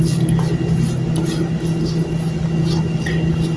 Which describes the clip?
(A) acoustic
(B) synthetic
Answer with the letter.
A